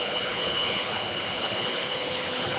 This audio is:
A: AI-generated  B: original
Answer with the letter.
A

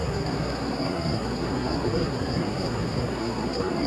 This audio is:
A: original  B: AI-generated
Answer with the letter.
B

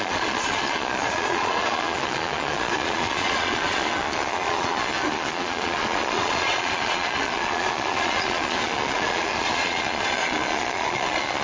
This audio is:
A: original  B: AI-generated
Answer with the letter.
B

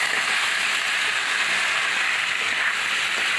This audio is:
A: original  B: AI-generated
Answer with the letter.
A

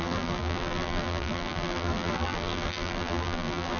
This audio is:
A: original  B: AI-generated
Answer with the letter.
B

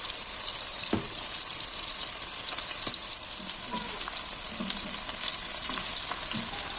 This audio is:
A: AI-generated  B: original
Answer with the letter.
A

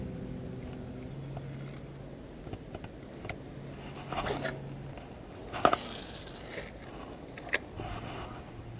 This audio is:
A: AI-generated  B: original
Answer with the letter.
B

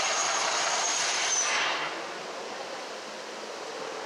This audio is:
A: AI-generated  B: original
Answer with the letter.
B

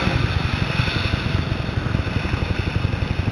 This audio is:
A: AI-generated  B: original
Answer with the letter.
B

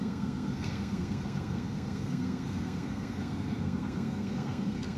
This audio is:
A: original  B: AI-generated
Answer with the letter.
B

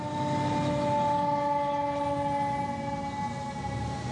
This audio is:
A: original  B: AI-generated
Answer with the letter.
A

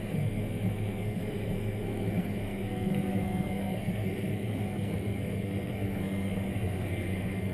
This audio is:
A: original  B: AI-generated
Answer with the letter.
B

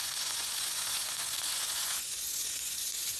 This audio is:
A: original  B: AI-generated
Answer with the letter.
B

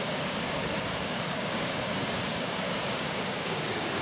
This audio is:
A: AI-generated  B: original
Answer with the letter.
A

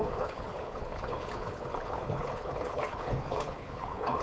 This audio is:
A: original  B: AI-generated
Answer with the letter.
B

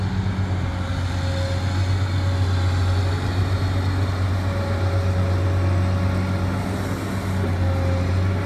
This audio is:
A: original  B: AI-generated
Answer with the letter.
A